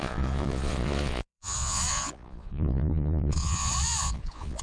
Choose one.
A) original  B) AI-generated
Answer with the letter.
B